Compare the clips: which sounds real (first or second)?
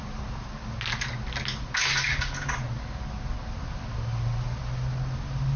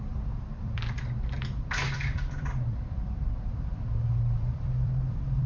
first